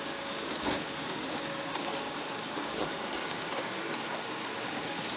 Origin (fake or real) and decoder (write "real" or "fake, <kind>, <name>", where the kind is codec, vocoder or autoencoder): fake, codec, DAC